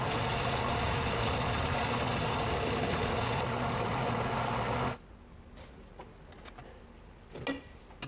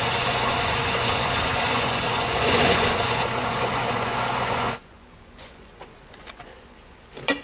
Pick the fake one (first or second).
second